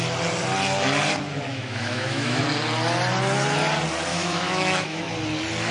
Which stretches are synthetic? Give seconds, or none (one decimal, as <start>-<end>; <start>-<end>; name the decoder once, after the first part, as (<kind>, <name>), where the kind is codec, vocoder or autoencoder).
1.5-2.4 (autoencoder, DAC-VAE); 4.1-5.0